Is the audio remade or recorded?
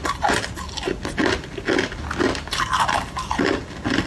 recorded